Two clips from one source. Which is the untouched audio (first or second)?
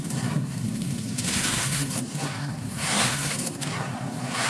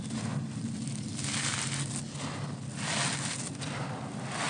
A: second